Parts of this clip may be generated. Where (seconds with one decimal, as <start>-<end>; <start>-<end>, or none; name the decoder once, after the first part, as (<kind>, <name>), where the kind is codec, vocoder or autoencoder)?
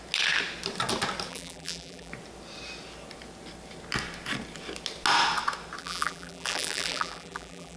1.3-2.1 (vocoder, BigVGAN v2); 5.8-7.8